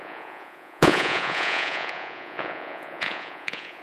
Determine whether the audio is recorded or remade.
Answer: remade